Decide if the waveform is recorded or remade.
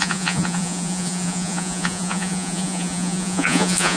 remade